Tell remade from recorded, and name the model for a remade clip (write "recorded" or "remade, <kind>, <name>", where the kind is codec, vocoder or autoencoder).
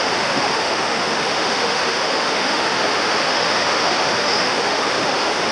remade, autoencoder, DAC-VAE